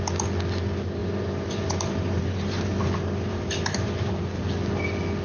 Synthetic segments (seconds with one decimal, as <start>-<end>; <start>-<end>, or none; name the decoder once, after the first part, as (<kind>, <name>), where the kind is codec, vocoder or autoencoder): 1.0-4.1 (vocoder, BigVGAN v2)